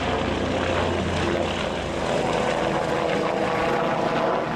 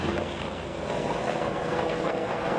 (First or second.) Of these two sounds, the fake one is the second